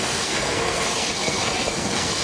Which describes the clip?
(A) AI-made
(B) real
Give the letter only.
A